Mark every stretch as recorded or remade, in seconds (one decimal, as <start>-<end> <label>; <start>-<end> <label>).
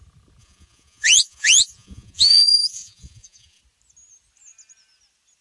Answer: 0.0-0.4 recorded; 0.4-3.6 remade; 3.6-5.4 recorded